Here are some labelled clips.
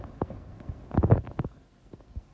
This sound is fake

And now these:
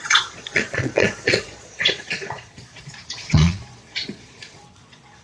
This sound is fake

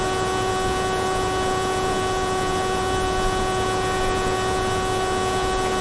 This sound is fake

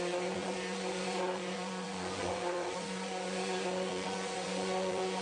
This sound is fake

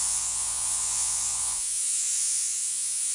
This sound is fake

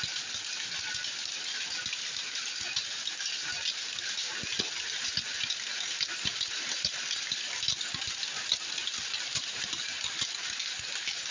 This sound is real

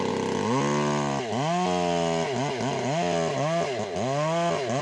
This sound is real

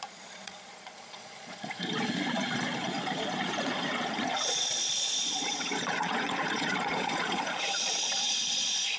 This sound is fake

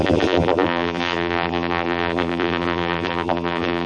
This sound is fake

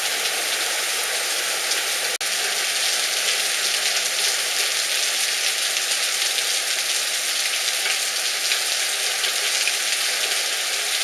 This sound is real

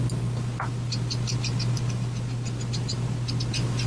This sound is real